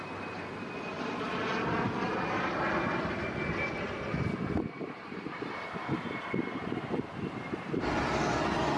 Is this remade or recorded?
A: recorded